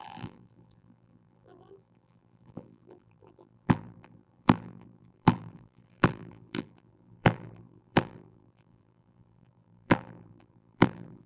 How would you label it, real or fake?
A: fake